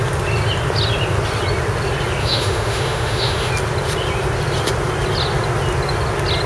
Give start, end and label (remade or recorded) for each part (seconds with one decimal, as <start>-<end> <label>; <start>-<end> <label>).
0.0-2.2 recorded; 2.2-3.5 remade; 3.5-6.5 recorded